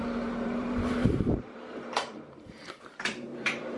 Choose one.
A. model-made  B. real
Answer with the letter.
A